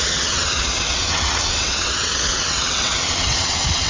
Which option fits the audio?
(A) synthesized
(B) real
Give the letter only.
A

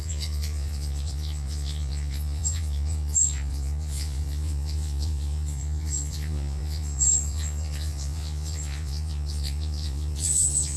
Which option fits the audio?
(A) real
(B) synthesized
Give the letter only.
B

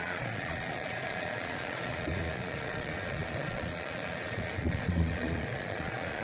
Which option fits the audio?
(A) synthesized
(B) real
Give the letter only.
A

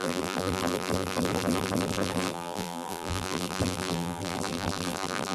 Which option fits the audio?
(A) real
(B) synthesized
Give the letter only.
B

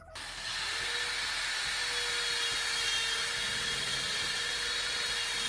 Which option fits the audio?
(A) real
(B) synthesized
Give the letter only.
A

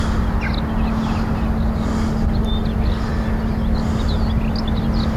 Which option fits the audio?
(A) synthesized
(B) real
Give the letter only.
B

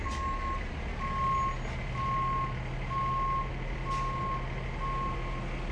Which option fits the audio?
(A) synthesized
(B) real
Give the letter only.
B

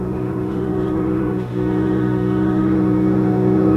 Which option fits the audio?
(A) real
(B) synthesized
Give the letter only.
B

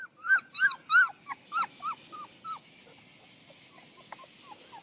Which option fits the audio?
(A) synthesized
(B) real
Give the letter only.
B